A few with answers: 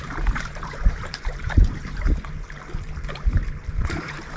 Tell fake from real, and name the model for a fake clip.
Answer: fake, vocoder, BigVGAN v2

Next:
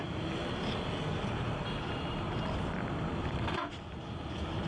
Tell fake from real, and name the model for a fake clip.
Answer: real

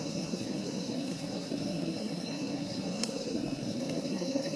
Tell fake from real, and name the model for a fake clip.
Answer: fake, codec, SNAC